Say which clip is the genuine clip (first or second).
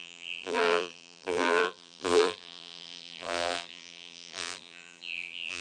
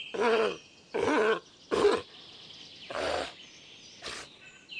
second